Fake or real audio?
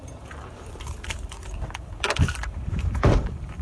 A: fake